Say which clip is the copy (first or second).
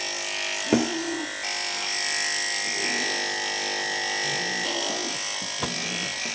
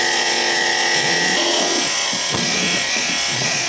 second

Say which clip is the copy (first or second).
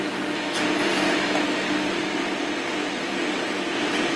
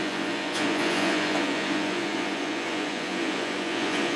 second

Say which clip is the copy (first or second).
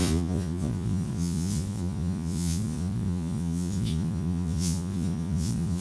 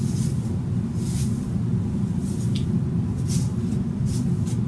first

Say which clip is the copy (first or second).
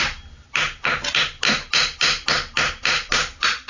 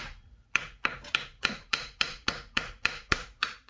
second